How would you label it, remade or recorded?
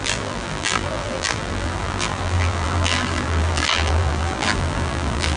remade